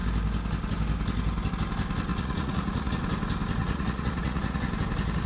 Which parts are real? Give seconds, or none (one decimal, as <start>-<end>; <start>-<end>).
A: 0.0-2.1; 2.9-3.6; 4.7-5.3